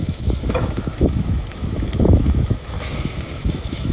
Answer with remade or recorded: remade